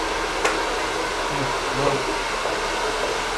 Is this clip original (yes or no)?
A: yes